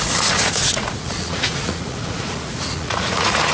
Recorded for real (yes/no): no